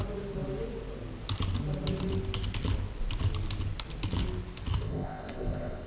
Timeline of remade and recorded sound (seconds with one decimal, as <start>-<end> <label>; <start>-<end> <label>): 0.0-4.7 recorded; 4.7-5.9 remade